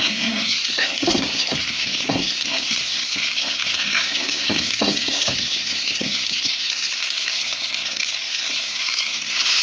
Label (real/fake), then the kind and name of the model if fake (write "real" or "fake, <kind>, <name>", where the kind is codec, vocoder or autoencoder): fake, codec, SNAC